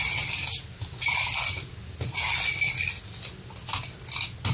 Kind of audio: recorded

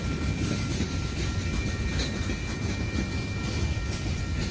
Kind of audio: recorded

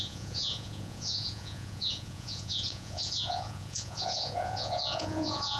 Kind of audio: remade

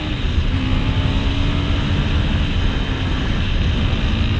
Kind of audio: recorded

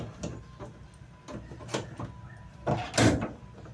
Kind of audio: recorded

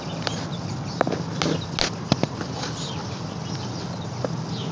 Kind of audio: recorded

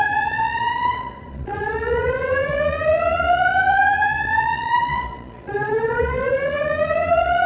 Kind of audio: remade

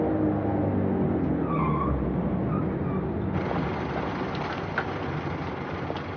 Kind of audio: recorded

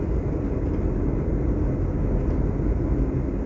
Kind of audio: recorded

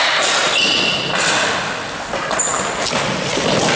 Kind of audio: recorded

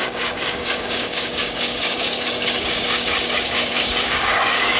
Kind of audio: remade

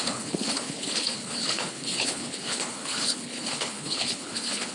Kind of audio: remade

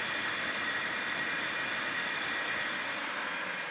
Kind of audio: recorded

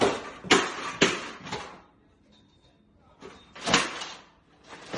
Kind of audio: recorded